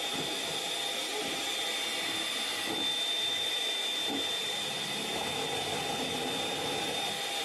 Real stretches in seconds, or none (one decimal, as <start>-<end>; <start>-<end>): 0.0-7.4